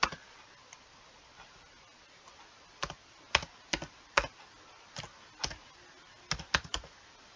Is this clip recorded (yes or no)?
yes